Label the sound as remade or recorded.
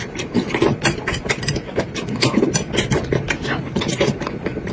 remade